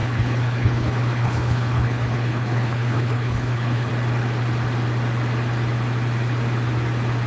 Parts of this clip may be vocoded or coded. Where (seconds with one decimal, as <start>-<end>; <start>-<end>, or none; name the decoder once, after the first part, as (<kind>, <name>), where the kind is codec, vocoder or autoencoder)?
0.0-3.9 (codec, HILCodec)